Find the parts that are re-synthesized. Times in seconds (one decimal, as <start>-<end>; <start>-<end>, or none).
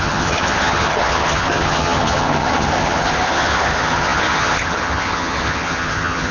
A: 0.0-6.3